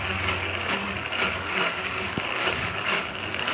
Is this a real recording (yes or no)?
no